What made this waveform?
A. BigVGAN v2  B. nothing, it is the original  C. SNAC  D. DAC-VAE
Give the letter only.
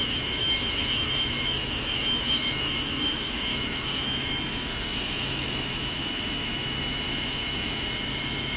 D